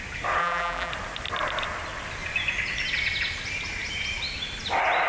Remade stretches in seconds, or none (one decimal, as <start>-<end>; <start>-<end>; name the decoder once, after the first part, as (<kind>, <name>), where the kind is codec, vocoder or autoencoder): 0.4-0.9 (vocoder, BigVGAN v2)